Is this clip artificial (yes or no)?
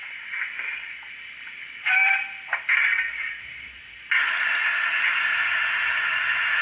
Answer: no